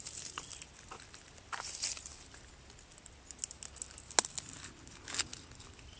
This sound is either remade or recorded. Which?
recorded